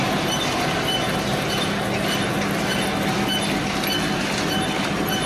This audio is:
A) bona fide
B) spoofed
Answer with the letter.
A